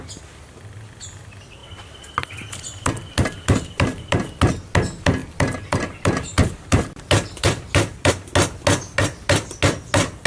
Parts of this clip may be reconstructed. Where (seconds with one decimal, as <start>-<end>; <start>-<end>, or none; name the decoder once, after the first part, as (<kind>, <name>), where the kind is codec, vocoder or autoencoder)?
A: 1.6-4.4 (vocoder, BigVGAN v2); 5.2-8.1